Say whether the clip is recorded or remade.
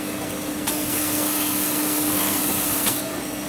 remade